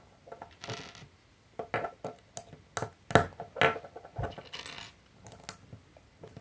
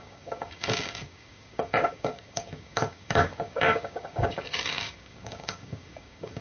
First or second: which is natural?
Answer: first